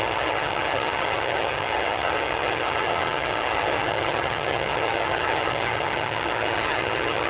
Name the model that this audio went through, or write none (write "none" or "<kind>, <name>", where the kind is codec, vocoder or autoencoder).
vocoder, HiFi-GAN